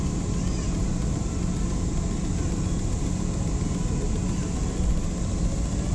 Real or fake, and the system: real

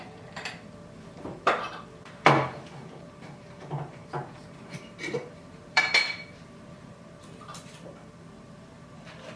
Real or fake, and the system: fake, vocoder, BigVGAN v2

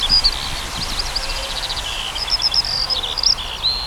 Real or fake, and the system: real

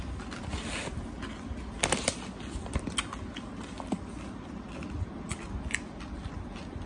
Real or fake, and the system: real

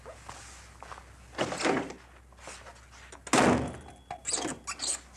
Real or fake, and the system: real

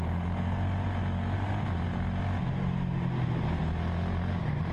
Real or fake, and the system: real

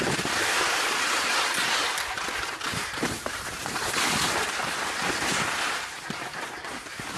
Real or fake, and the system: real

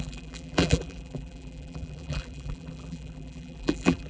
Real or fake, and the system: fake, vocoder, BigVGAN v2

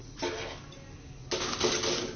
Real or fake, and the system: real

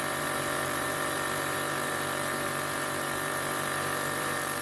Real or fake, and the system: fake, vocoder, BigVGAN v2